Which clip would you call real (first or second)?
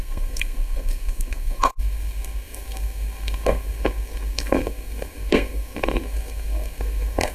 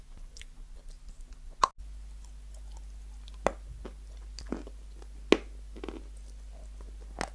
second